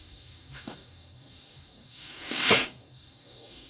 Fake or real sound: fake